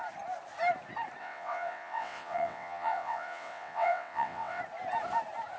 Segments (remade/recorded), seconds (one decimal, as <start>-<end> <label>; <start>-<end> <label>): 0.0-1.2 recorded; 1.2-4.6 remade; 4.6-5.6 recorded